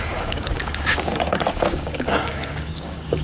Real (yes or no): no